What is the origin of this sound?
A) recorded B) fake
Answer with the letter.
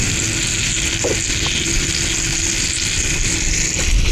A